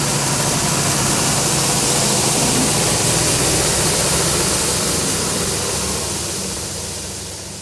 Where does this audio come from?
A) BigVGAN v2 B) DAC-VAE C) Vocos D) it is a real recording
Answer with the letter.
A